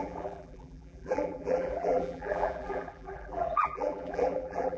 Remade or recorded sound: remade